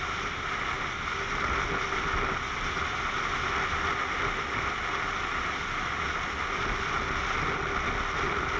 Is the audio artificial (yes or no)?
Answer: no